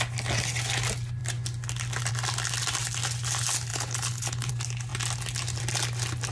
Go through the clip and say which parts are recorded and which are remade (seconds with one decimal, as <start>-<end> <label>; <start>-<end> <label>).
0.0-3.7 recorded; 3.7-4.5 remade; 4.5-6.3 recorded

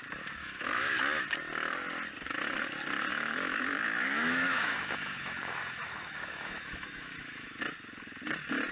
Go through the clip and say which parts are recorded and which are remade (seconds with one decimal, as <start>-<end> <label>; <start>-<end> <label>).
0.0-0.4 recorded; 0.4-1.0 remade; 1.0-3.1 recorded; 3.1-7.6 remade; 7.6-8.7 recorded